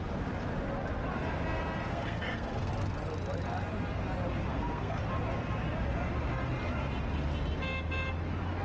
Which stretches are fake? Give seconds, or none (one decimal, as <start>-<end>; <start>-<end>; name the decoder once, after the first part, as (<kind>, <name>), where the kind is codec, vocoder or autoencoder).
1.9-2.7 (codec, SNAC); 4.5-5.0